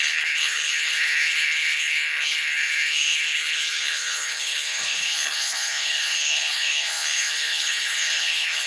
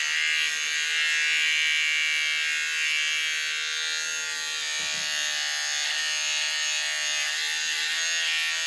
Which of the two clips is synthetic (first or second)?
first